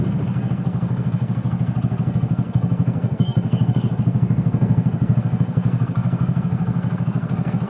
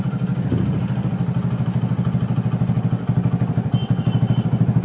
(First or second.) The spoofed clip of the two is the first